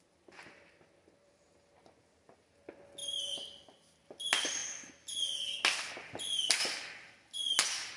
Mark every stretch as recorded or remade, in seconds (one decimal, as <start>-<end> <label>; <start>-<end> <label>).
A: 0.0-8.0 recorded